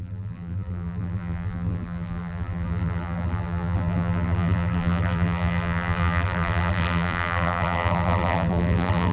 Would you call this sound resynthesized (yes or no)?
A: yes